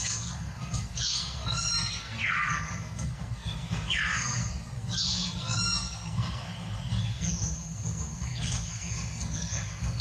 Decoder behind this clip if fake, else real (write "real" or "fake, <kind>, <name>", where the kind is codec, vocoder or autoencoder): fake, codec, SNAC